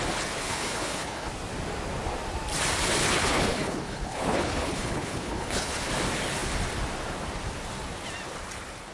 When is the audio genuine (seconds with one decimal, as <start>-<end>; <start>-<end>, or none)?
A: 0.0-0.4; 1.3-3.0; 5.9-8.9